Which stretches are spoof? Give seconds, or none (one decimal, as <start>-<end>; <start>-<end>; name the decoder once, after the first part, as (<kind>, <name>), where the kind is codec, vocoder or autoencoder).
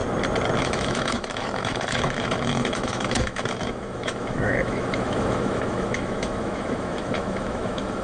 0.6-8.0 (autoencoder, DAC-VAE)